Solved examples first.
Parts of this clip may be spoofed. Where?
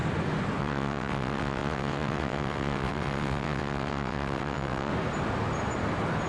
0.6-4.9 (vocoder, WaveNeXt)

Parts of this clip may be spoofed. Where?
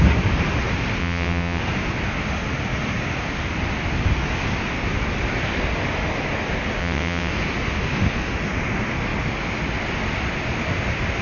1.0-1.6 (vocoder, WaveNeXt); 6.8-7.3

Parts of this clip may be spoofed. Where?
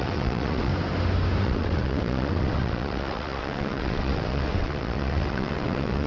0.0-0.7 (vocoder, WaveNeXt); 1.4-6.1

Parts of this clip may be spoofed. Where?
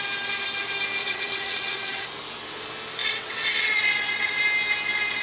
1.0-2.0 (vocoder, WaveNeXt); 3.0-4.4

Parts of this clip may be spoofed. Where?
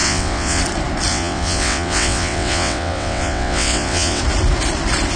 0.0-0.6 (vocoder, WaveNeXt); 1.1-4.2